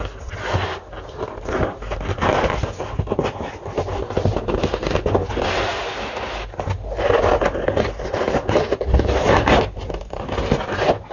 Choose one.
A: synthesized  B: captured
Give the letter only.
B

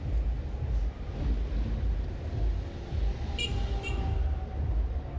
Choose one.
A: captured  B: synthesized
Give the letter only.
A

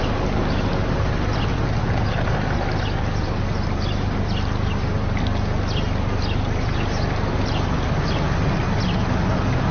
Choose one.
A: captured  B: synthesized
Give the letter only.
A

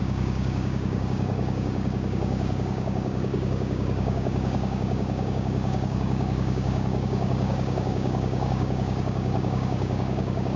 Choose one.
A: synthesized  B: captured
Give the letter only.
A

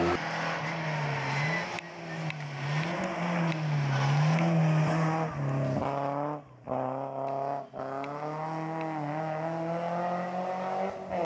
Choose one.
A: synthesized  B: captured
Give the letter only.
B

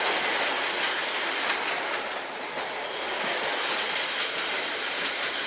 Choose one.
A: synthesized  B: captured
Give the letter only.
B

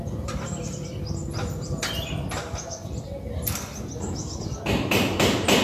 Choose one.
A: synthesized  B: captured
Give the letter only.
B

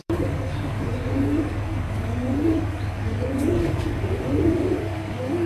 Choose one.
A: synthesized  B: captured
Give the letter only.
A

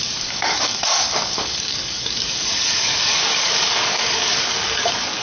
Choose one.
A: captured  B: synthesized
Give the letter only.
B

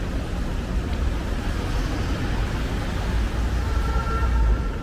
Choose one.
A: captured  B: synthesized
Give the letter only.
A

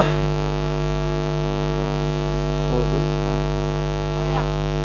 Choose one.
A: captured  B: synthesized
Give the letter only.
B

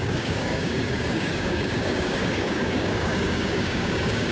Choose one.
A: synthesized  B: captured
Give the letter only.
A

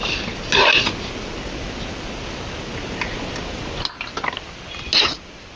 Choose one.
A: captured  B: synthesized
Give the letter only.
A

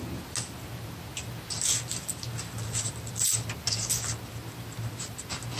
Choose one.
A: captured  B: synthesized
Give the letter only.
A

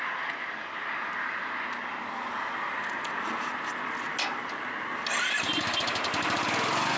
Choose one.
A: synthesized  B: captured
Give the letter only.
B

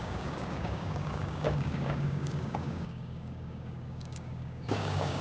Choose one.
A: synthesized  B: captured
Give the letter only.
A